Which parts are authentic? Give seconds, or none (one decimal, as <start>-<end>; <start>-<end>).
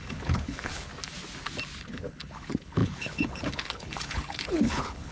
0.9-1.8